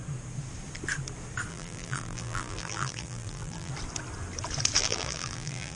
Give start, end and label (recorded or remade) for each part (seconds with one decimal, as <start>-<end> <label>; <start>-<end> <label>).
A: 0.0-1.5 recorded; 1.5-3.7 remade; 3.7-4.8 recorded; 4.8-5.8 remade